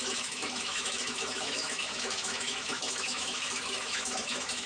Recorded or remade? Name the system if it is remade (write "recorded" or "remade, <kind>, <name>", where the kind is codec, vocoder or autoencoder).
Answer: remade, autoencoder, DAC-VAE